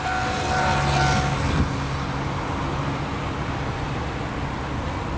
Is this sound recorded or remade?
recorded